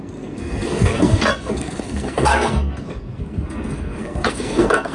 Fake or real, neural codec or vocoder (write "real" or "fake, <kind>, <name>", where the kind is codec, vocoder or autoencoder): fake, codec, SNAC